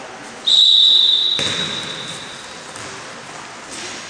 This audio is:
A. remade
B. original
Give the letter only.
B